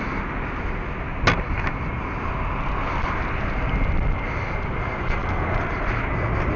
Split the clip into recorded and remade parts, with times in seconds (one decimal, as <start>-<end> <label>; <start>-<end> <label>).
0.0-5.2 recorded; 5.2-5.8 remade; 5.8-6.6 recorded